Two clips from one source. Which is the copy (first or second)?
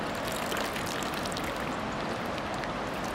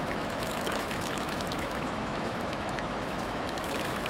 second